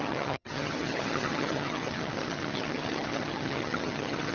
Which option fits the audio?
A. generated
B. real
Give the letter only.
A